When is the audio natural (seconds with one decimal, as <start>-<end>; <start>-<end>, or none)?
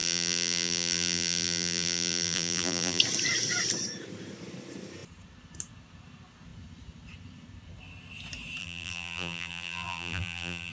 3.0-8.6